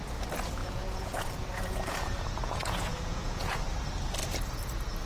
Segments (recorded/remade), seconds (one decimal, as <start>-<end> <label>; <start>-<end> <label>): 0.0-0.6 recorded; 0.6-3.6 remade; 3.6-5.0 recorded